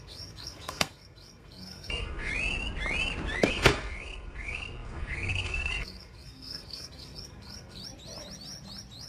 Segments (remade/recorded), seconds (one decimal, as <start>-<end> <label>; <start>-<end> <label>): 0.0-2.3 remade; 2.3-3.5 recorded; 3.5-7.8 remade; 7.8-9.1 recorded